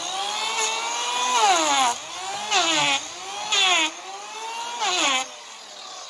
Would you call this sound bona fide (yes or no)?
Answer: yes